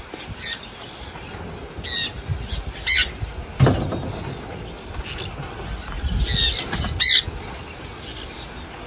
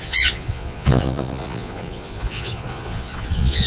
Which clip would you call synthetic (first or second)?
second